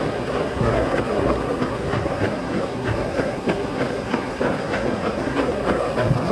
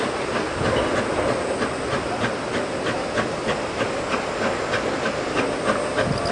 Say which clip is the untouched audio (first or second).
second